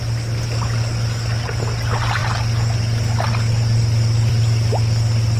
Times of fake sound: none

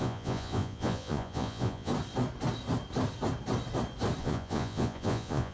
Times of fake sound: 0.0-1.9 (vocoder, Vocos); 4.2-5.5

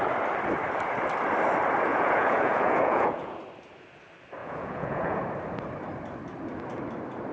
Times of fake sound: 1.9-3.4 (vocoder, Vocos); 4.4-5.2

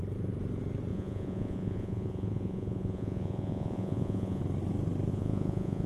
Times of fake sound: 0.9-4.4 (vocoder, Vocos); 5.1-5.9